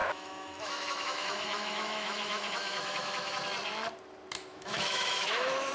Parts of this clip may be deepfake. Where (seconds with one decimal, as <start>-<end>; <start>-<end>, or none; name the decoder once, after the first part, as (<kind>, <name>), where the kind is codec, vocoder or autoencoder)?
0.0-3.4 (autoencoder, DAC-VAE); 4.5-5.7